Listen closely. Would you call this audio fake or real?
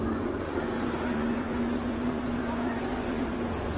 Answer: fake